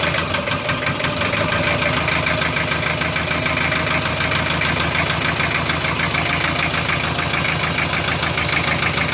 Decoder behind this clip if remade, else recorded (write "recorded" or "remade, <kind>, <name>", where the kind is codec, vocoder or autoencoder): recorded